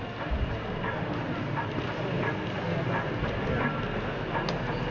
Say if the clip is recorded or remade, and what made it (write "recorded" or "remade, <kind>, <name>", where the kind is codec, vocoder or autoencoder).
recorded